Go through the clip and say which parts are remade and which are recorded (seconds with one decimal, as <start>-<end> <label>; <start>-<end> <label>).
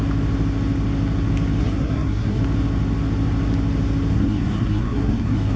0.0-1.6 recorded; 1.6-2.4 remade; 2.4-4.1 recorded; 4.1-5.6 remade